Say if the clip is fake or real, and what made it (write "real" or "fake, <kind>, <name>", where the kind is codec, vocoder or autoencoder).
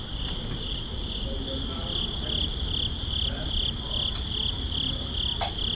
real